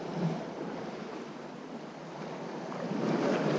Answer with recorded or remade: recorded